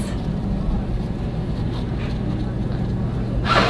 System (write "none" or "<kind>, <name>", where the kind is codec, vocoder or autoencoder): none